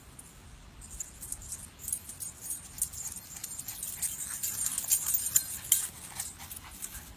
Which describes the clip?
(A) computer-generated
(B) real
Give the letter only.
B